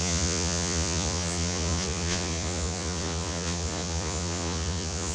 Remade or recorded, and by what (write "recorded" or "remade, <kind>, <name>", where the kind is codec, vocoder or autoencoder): remade, vocoder, Vocos